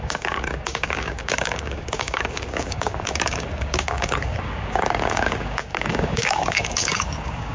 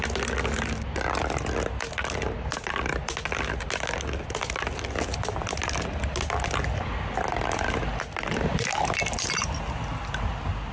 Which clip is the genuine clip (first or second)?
second